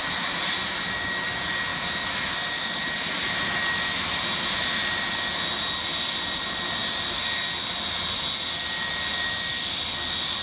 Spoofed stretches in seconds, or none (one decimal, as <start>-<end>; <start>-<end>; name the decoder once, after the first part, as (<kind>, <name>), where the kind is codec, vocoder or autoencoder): none